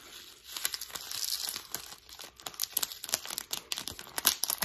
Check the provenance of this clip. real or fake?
real